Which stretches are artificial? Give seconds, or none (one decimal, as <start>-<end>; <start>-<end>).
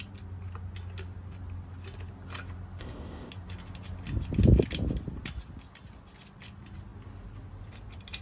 2.8-3.3